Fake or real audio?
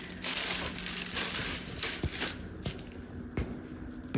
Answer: real